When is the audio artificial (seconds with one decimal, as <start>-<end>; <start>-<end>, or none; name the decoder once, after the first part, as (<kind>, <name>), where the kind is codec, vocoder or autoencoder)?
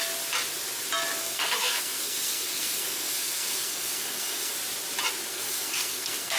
1.2-4.5 (codec, SNAC); 5.3-6.4